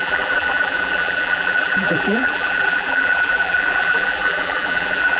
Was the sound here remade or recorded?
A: remade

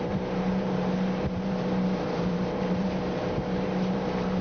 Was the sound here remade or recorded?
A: remade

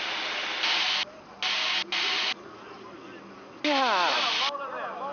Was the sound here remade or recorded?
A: recorded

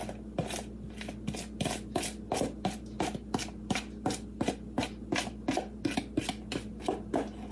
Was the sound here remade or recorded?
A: recorded